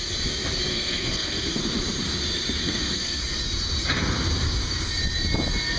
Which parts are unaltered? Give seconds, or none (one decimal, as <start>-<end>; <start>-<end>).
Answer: 0.0-0.7; 1.6-2.6; 3.2-5.8